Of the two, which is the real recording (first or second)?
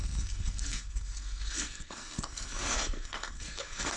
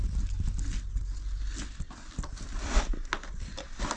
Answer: second